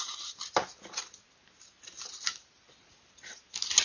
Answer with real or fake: real